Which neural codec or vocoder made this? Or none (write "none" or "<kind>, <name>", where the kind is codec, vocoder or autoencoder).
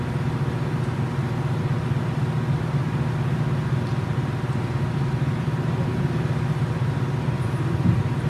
none